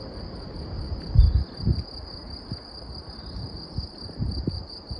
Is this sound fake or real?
real